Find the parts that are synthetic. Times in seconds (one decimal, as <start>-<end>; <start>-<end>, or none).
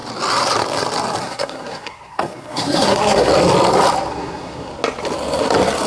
1.2-3.3; 4.1-4.7